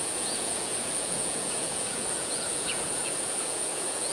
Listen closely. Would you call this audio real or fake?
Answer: fake